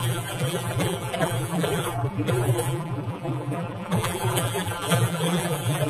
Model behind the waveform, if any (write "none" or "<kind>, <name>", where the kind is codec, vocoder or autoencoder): vocoder, BigVGAN v2